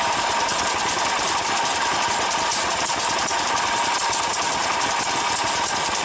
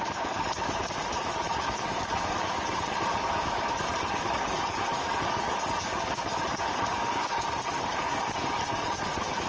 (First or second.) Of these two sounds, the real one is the first